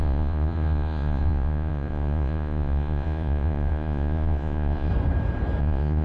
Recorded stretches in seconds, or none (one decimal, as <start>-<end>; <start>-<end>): 4.9-5.6

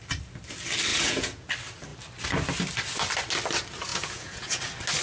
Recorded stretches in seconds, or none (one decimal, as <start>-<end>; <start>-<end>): 0.0-0.9; 1.5-3.9; 4.6-5.0